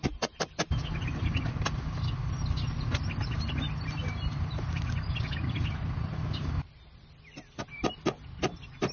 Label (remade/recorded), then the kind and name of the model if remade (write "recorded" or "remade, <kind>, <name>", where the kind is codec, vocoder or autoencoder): recorded